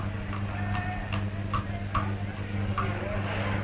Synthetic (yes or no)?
no